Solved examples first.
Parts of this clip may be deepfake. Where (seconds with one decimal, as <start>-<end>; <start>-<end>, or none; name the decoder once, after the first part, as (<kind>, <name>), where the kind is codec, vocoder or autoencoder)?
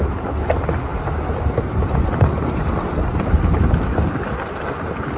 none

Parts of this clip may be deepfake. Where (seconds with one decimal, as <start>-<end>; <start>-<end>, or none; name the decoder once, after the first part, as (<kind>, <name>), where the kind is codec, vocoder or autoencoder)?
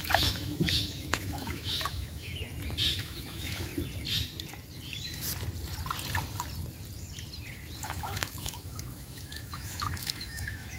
0.0-2.3 (autoencoder, DAC-VAE); 3.0-3.7; 7.8-10.8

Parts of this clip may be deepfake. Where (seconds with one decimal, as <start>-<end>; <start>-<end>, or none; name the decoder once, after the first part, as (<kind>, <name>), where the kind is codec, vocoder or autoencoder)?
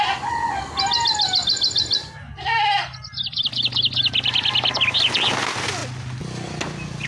none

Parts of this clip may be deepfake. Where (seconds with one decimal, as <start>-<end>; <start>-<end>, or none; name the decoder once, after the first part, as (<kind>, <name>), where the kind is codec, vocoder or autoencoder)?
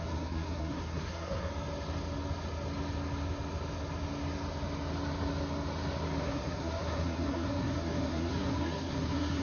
0.0-1.5 (codec, SNAC); 6.2-9.4